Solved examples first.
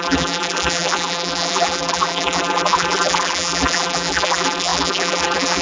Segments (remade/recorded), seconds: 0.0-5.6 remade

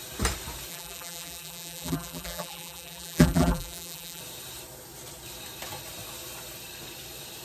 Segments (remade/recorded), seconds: 0.0-0.7 recorded; 0.7-4.2 remade; 4.2-7.4 recorded

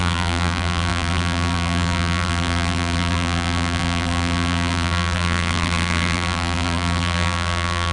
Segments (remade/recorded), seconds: 0.0-7.9 remade

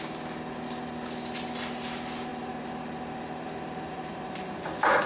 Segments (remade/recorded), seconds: 0.0-2.3 recorded; 2.3-4.6 remade; 4.6-5.1 recorded

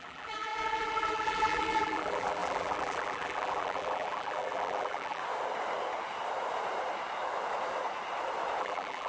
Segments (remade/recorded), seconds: 0.0-5.2 remade; 5.2-8.6 recorded; 8.6-9.1 remade